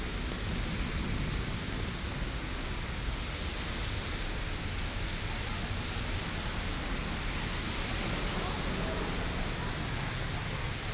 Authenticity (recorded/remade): recorded